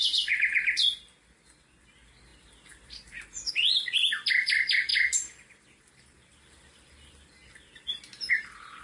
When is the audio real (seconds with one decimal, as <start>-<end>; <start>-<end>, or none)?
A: 0.0-8.8